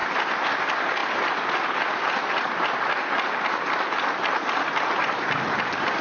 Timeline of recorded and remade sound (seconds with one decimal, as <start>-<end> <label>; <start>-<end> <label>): 0.0-6.0 recorded